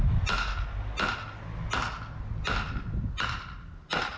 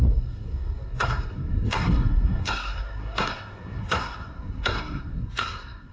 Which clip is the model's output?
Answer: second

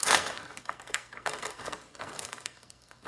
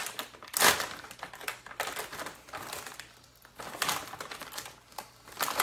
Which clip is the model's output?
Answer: first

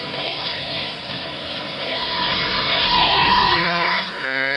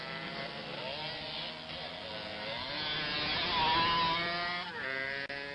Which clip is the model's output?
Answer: first